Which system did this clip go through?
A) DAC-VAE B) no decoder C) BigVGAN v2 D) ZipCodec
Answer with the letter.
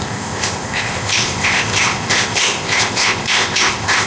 D